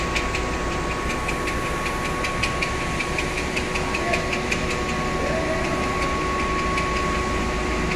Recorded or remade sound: recorded